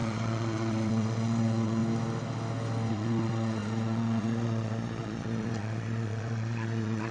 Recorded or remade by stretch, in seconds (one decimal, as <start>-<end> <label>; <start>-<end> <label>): 0.0-1.8 remade; 1.8-2.9 recorded; 2.9-7.1 remade